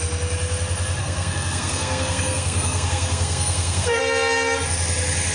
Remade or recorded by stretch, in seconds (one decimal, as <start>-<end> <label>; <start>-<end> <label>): 0.0-1.0 recorded; 1.0-4.0 remade; 4.0-5.3 recorded